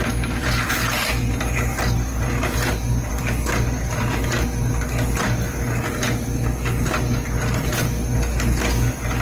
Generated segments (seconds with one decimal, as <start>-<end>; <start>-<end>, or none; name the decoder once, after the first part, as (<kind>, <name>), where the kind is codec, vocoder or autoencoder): none

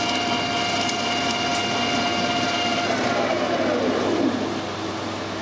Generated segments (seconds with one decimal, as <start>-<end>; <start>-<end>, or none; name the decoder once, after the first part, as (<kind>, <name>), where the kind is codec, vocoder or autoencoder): none

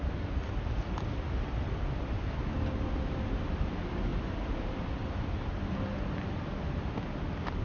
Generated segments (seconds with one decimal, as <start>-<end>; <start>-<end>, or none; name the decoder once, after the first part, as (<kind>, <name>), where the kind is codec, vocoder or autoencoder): none